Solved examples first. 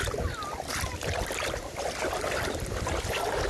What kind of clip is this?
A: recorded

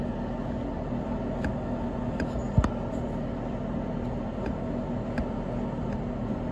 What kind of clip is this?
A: recorded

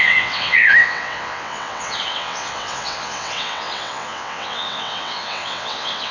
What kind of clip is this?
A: remade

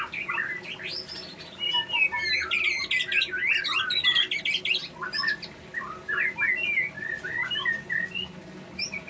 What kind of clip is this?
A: recorded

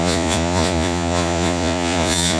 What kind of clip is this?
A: remade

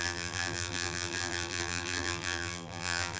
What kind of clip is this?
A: remade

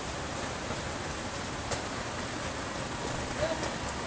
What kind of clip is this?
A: recorded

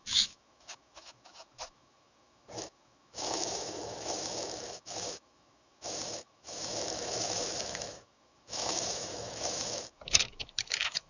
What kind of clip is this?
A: remade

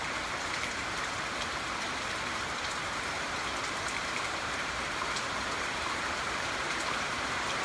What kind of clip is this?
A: remade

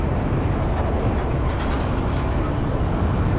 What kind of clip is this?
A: remade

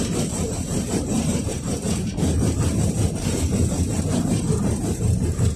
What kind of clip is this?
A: remade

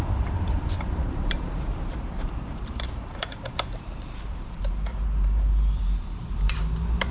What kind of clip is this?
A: remade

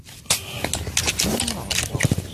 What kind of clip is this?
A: recorded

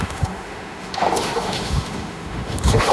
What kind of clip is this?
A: remade